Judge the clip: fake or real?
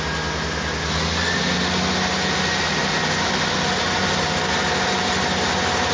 real